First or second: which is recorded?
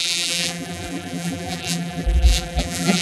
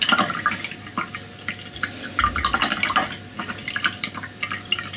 second